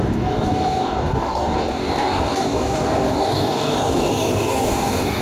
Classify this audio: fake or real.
fake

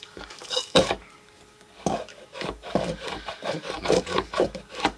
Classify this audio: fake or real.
fake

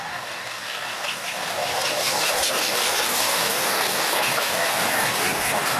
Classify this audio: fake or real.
fake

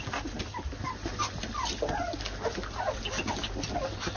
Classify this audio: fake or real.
real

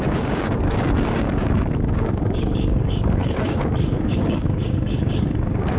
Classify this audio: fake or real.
fake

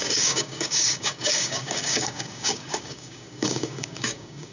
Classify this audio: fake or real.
fake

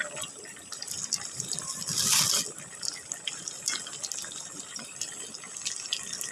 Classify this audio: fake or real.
real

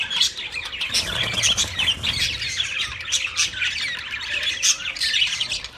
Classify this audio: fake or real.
real